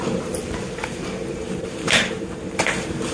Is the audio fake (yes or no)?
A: yes